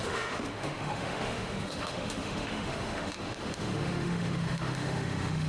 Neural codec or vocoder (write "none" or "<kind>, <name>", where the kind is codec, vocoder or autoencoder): autoencoder, DAC-VAE